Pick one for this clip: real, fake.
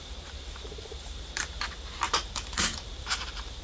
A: fake